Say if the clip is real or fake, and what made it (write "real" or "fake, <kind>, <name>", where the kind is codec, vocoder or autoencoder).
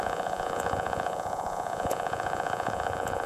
fake, vocoder, Vocos